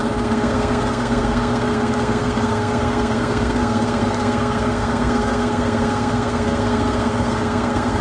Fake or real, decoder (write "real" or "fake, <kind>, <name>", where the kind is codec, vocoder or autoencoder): fake, codec, SNAC